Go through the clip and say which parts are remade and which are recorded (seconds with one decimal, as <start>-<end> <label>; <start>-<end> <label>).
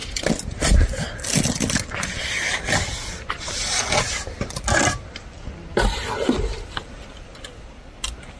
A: 0.0-8.4 recorded